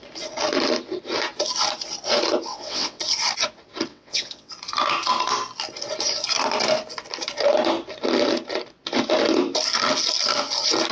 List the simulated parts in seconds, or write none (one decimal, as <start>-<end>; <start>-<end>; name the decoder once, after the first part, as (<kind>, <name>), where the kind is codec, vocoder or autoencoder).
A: 2.5-3.0 (vocoder, WaveNeXt); 3.9-4.5